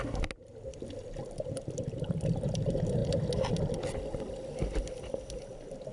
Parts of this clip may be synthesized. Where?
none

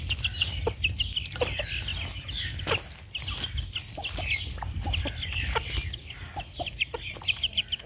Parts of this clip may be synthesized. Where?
none

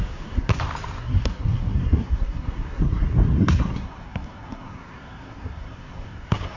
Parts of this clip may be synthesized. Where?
0.0-0.5 (codec, SNAC); 1.0-6.6

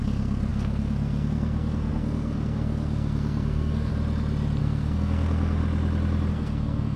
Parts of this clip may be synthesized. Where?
0.0-3.9 (codec, SNAC); 4.6-5.6; 6.3-7.0

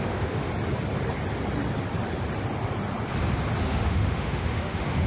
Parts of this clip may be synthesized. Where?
0.0-0.5 (autoencoder, DAC-VAE); 3.6-5.1